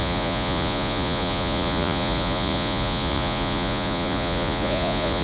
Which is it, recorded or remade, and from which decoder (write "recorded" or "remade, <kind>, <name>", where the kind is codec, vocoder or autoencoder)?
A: remade, vocoder, Vocos